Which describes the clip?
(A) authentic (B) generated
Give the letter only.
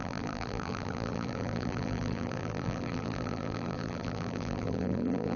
B